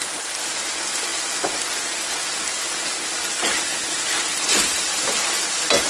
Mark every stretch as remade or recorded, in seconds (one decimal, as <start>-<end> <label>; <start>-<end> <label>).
0.0-5.9 recorded